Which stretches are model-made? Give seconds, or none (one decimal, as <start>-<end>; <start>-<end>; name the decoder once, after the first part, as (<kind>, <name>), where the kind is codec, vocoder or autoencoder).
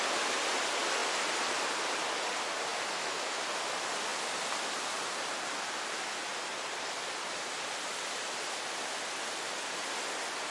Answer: 2.7-3.5 (autoencoder, DAC-VAE)